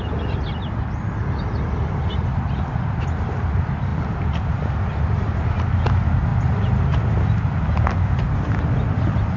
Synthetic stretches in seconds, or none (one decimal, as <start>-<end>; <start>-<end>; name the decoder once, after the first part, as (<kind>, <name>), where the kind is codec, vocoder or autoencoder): none